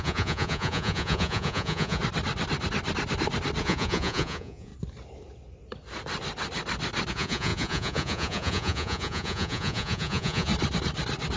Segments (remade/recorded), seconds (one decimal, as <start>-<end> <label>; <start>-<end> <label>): 0.0-2.0 remade; 2.0-3.6 recorded; 3.6-4.7 remade; 4.7-7.1 recorded; 7.1-10.5 remade; 10.5-11.4 recorded